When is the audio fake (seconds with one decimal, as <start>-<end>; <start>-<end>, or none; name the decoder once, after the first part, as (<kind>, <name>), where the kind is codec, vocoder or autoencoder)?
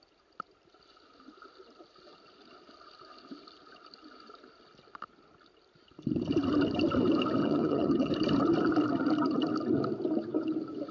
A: 7.4-8.1 (vocoder, HiFi-GAN)